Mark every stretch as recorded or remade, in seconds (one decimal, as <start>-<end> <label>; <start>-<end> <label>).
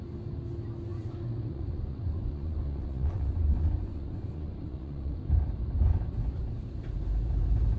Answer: 0.0-0.9 recorded; 0.9-5.2 remade; 5.2-7.8 recorded